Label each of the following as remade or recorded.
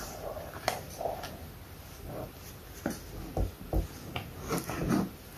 recorded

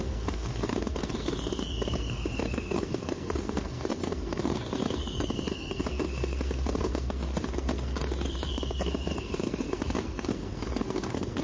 remade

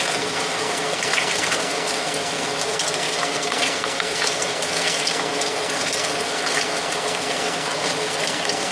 remade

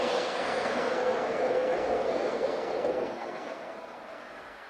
remade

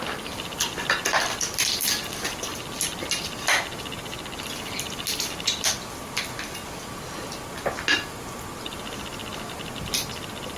recorded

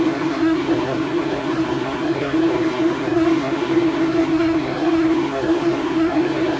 remade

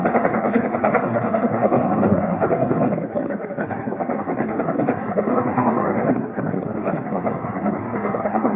remade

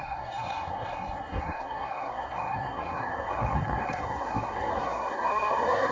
remade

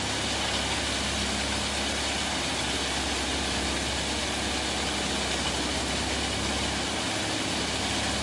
recorded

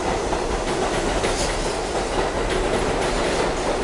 recorded